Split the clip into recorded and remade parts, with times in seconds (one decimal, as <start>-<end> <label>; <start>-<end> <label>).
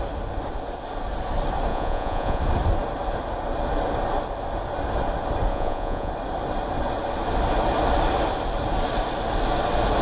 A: 0.0-1.7 recorded; 1.7-2.4 remade; 2.4-5.5 recorded; 5.5-6.1 remade; 6.1-10.0 recorded